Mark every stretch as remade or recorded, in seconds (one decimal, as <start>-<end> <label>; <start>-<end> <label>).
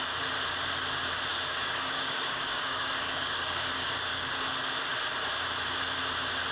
0.0-1.3 recorded; 1.3-4.3 remade; 4.3-6.5 recorded